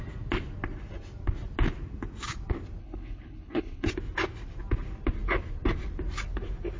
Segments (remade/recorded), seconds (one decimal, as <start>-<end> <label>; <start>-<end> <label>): 0.0-2.8 recorded; 2.8-3.9 remade; 3.9-6.8 recorded